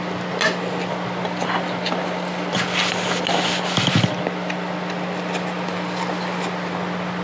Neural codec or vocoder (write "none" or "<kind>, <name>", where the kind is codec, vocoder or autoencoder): none